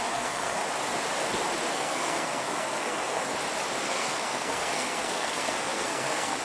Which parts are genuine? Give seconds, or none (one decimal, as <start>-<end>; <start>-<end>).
0.6-1.7; 3.2-3.8